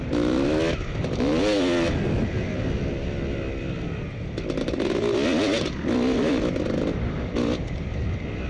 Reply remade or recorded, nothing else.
recorded